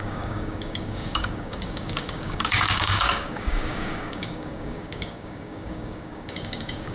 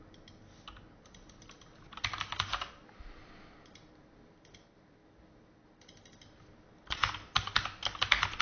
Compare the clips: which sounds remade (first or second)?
first